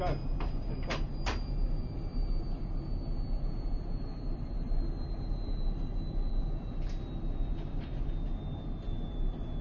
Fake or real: real